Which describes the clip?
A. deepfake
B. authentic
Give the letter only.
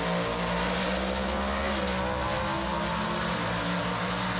B